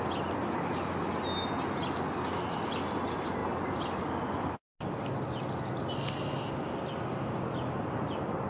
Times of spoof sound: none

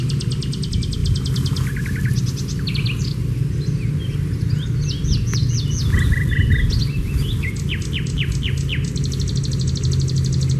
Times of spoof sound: none

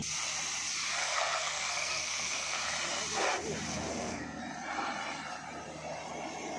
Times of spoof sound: 1.0-2.6 (codec, SNAC); 3.9-4.4

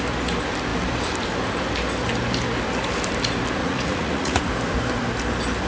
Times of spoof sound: 3.6-4.4 (vocoder, Vocos)

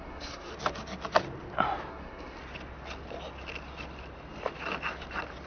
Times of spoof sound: 0.0-0.5 (codec, SNAC); 1.9-2.4

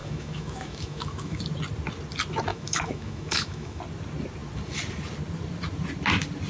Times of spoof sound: 0.0-1.4 (autoencoder, DAC-VAE); 2.5-3.8